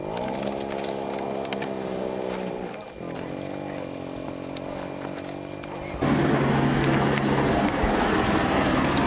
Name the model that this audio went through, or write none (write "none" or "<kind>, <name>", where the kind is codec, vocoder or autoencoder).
none